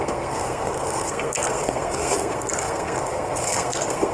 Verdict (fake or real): fake